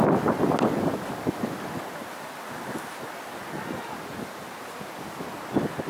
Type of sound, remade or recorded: recorded